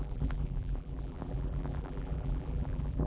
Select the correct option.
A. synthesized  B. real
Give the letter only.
A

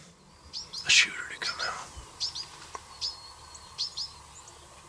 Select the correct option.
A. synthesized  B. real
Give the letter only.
B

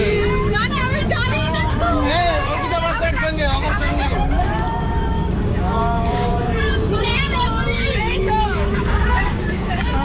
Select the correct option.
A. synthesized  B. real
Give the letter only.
A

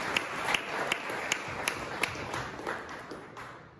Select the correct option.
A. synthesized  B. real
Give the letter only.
B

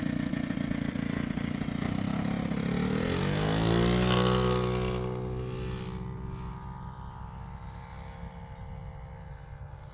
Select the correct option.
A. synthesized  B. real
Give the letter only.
B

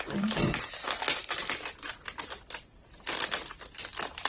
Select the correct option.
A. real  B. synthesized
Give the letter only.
A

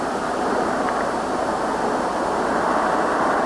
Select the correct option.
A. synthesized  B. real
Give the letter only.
B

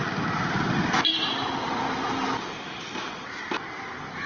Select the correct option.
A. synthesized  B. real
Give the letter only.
B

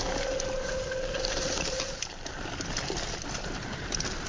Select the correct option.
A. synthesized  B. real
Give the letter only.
B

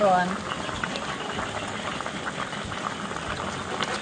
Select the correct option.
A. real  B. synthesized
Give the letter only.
A